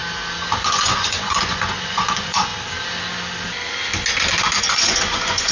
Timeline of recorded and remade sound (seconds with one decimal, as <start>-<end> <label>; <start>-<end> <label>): 0.0-0.6 recorded; 0.6-2.5 remade; 2.5-4.6 recorded; 4.6-5.5 remade